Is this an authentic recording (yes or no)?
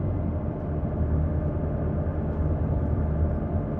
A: yes